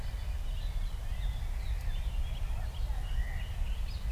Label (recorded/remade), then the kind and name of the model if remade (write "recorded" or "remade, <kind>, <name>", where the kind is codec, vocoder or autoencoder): recorded